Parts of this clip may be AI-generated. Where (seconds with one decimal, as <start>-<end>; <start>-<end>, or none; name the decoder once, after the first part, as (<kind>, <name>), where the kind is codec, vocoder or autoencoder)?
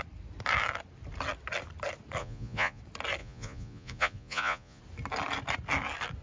2.2-2.8 (vocoder, Vocos); 3.2-4.8